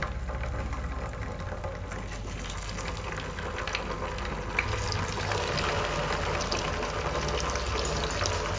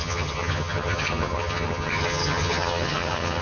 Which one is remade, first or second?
second